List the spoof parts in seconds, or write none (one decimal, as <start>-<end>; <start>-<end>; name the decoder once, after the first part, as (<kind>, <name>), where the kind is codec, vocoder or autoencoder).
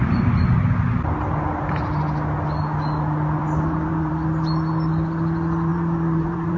3.4-4.1 (vocoder, BigVGAN v2); 5.7-6.6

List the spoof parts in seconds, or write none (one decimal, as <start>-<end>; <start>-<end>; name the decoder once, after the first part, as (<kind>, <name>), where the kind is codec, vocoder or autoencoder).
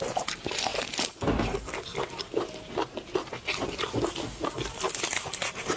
none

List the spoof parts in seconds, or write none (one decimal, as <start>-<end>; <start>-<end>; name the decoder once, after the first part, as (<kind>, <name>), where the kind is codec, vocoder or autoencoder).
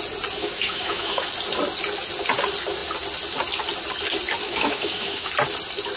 0.4-1.3 (autoencoder, DAC-VAE); 4.4-5.3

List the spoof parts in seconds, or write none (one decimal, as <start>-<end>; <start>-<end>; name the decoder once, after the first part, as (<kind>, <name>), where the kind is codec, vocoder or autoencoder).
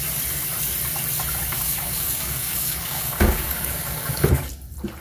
1.5-4.5 (codec, DAC)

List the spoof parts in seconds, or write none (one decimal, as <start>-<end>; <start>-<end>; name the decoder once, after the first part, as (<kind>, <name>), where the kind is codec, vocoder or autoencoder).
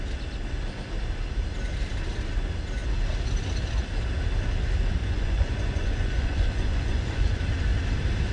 5.0-7.4 (vocoder, Vocos)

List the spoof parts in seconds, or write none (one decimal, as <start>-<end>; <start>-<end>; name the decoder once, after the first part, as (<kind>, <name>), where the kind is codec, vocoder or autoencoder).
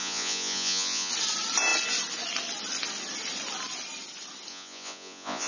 0.0-1.1 (vocoder, Vocos); 4.5-5.5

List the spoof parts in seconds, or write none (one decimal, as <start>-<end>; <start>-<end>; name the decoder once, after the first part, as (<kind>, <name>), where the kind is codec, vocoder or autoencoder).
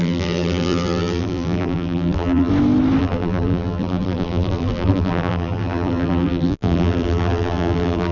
0.0-2.5 (vocoder, BigVGAN v2); 3.0-8.1